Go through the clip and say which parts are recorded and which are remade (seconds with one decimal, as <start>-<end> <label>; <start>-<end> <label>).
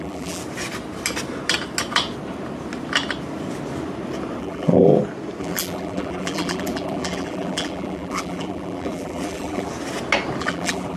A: 0.0-0.4 remade; 0.4-4.4 recorded; 4.4-4.9 remade; 4.9-5.4 recorded; 5.4-9.7 remade; 9.7-10.4 recorded; 10.4-11.0 remade